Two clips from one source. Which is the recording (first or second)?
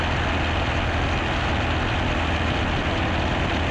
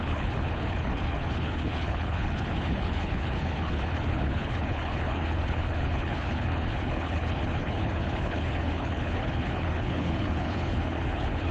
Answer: first